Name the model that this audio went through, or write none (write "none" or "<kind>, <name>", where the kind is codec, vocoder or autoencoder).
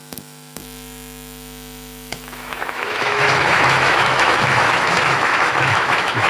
autoencoder, DAC-VAE